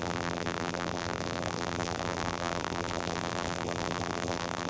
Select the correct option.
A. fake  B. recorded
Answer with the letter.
A